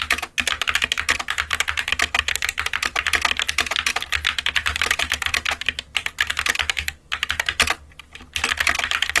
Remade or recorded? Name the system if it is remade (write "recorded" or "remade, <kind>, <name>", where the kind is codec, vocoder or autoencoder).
recorded